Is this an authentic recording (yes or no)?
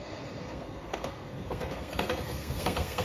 no